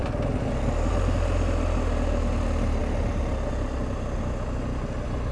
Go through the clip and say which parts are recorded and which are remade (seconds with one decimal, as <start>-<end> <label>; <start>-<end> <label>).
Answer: 0.0-5.3 recorded